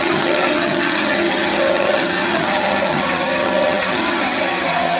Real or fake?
fake